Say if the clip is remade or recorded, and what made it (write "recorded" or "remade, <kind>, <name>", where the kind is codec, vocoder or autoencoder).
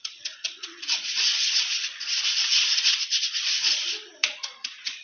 remade, vocoder, Vocos